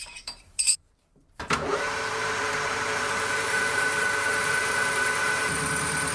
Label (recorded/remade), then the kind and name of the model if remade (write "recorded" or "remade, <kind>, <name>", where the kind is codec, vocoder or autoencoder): remade, vocoder, BigVGAN v2